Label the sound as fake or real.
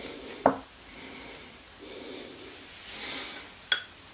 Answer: real